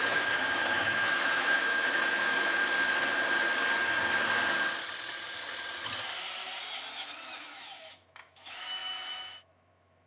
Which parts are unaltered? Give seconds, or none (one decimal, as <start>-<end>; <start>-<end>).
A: 2.6-7.4